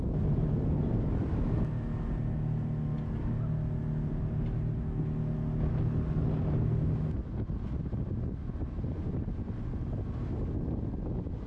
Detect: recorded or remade recorded